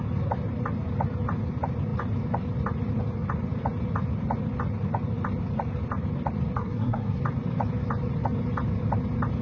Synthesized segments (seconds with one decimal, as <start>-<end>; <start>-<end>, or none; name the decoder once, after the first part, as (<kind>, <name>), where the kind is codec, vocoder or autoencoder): 6.6-7.2 (codec, SNAC)